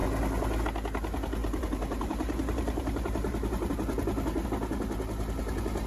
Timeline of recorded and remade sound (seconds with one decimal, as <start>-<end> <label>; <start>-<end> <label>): 0.0-1.4 recorded; 1.4-3.7 remade; 3.7-5.9 recorded